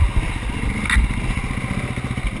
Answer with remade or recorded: recorded